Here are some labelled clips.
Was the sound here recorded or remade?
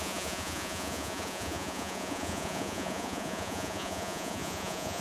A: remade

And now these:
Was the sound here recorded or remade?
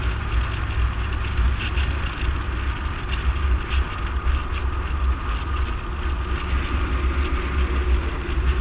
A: recorded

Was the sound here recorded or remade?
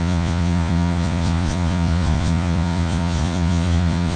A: remade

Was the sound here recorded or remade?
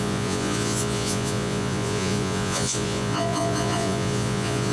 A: remade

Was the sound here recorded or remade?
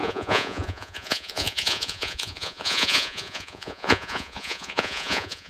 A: remade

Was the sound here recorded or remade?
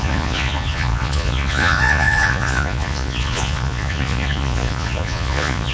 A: remade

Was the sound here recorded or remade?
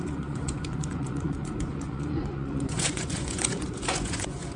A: remade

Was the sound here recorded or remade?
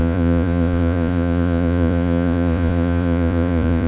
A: remade